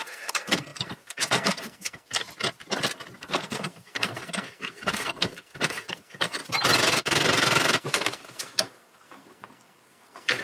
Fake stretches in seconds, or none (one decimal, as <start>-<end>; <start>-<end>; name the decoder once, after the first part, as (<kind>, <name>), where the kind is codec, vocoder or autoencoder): 0.0-2.2 (codec, SNAC); 3.2-6.4; 6.9-10.4